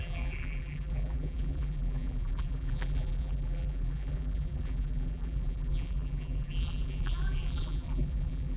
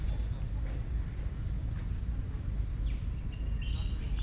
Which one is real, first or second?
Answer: second